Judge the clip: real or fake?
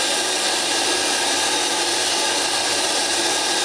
real